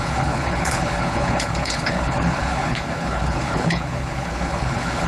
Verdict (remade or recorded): remade